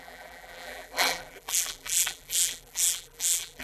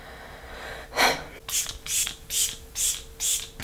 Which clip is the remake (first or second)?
first